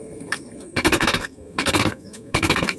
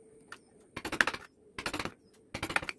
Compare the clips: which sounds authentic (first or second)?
second